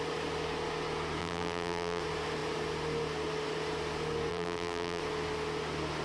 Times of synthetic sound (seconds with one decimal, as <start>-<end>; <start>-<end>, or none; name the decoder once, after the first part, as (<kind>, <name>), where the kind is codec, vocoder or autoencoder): 1.2-2.0 (vocoder, BigVGAN v2); 4.3-5.0